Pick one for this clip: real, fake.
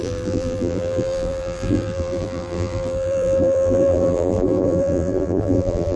fake